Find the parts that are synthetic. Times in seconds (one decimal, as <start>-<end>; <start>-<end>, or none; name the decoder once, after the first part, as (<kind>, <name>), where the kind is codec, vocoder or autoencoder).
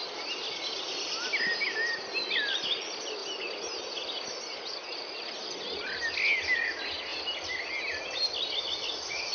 none